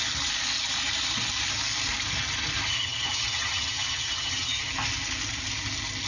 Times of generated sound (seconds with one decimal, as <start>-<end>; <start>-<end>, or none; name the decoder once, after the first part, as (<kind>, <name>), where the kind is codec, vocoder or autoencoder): 2.7-4.7 (vocoder, HiFi-GAN)